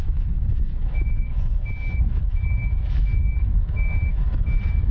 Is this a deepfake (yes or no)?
yes